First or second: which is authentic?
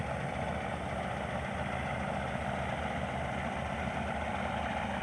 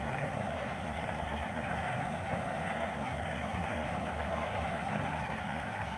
first